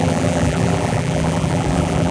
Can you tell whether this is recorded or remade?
remade